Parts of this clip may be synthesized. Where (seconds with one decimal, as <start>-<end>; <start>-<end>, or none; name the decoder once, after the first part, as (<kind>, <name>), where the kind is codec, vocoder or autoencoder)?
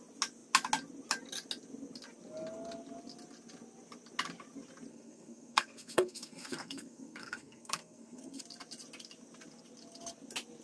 4.9-8.4 (codec, SNAC)